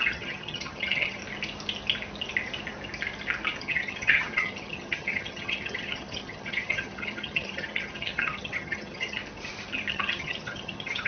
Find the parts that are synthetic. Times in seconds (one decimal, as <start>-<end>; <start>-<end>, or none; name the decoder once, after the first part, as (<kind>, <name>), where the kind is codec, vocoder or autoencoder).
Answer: 0.0-1.2 (vocoder, HiFi-GAN); 3.6-9.2; 9.9-11.1